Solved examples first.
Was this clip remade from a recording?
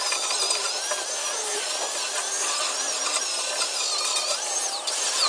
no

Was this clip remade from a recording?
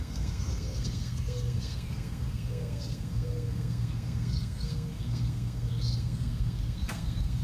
yes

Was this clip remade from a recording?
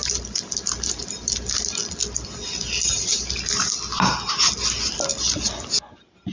no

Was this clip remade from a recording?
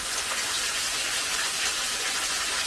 yes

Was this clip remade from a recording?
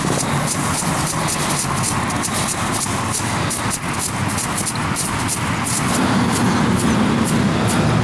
no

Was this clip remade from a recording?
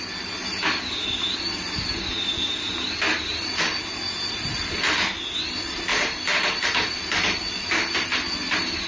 no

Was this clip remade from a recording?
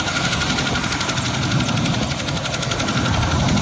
no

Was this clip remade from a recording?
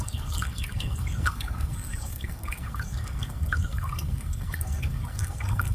yes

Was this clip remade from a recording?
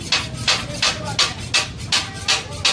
no